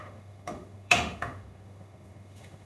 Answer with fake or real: fake